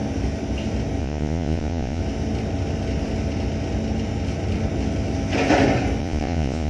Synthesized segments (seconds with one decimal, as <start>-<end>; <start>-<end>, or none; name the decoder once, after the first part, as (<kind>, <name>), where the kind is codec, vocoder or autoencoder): 1.0-2.0 (vocoder, Vocos); 6.0-6.7